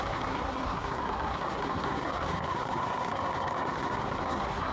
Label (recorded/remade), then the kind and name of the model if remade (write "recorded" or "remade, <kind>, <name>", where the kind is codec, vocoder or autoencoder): remade, codec, SNAC